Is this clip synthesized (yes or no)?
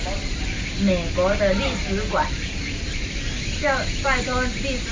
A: no